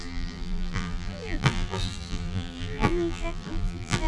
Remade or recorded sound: remade